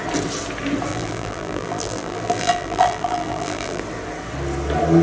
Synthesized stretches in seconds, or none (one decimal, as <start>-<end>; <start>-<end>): 0.9-3.8